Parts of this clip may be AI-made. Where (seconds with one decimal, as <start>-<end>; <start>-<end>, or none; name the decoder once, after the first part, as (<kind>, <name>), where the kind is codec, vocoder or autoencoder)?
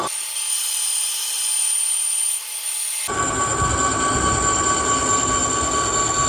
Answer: none